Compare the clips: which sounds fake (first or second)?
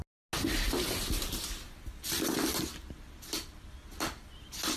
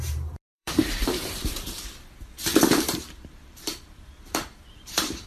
second